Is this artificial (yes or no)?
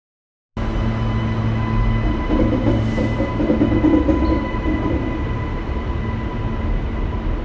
no